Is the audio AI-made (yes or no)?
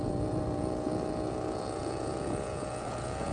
yes